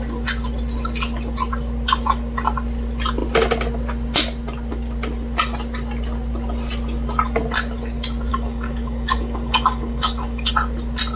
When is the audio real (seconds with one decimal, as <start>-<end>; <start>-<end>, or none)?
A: 0.0-8.3; 10.5-11.2